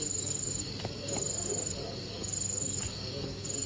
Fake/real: fake